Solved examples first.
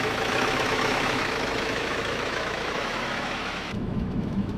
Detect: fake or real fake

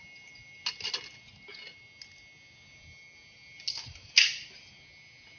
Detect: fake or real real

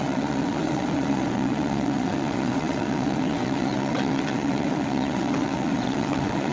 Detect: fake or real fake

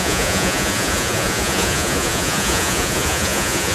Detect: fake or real fake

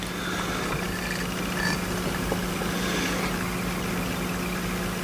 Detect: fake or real real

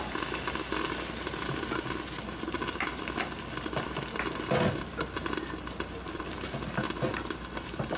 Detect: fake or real fake